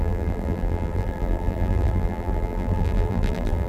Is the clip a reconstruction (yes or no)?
yes